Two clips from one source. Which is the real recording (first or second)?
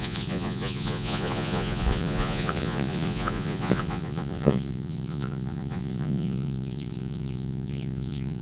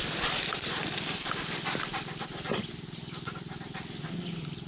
second